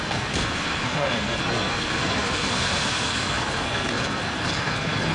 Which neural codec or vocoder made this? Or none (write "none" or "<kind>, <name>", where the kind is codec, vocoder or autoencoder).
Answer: codec, SNAC